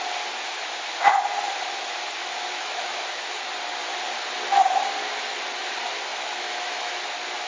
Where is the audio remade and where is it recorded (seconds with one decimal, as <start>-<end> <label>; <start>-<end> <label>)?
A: 0.0-2.2 recorded; 2.2-3.5 remade; 3.5-6.1 recorded; 6.1-6.9 remade; 6.9-7.5 recorded